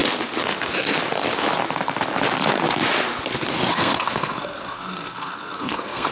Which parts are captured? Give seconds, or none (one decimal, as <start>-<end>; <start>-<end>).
0.0-3.7